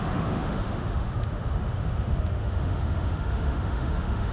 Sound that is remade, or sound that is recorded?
remade